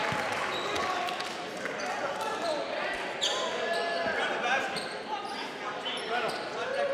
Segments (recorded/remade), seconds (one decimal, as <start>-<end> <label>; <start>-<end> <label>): 0.0-6.9 recorded